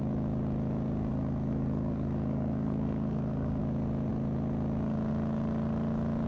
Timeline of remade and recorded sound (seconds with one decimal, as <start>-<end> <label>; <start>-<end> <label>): 0.0-1.1 recorded; 1.1-3.6 remade; 3.6-6.3 recorded